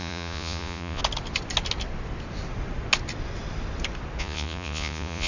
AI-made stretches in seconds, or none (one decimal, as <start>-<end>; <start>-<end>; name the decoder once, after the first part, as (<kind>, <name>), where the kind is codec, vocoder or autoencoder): 0.0-1.0 (vocoder, Vocos); 4.2-5.3